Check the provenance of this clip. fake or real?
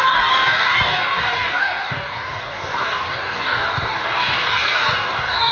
fake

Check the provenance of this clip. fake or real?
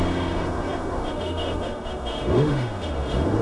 fake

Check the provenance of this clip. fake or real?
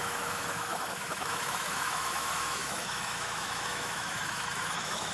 fake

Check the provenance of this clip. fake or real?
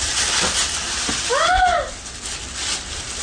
real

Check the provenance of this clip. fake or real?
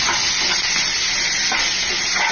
real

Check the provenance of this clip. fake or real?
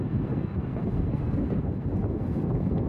fake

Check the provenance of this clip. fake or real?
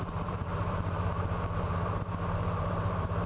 fake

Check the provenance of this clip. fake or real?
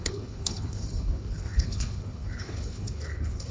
fake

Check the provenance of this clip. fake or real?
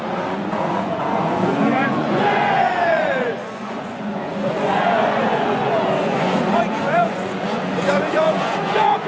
fake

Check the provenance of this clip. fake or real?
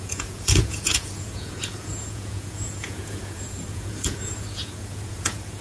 fake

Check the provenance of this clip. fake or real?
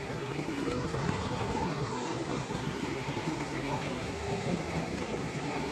fake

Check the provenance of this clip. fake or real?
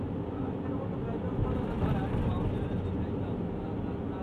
real